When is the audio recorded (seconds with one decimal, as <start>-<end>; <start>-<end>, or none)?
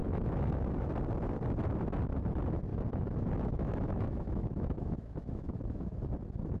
0.9-2.7; 6.0-6.6